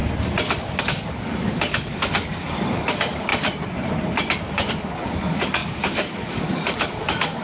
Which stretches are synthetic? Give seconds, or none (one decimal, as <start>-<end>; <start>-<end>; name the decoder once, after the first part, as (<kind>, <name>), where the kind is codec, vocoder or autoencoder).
0.8-3.3 (codec, DAC); 4.7-7.4